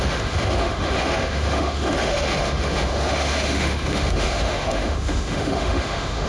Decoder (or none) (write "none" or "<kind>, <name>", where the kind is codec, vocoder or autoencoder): autoencoder, DAC-VAE